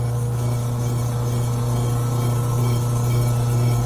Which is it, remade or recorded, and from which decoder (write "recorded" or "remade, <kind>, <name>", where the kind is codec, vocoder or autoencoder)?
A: recorded